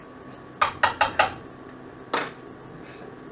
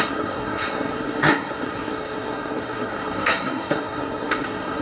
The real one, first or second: first